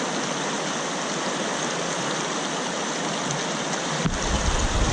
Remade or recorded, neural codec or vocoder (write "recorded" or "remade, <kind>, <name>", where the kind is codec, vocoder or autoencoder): recorded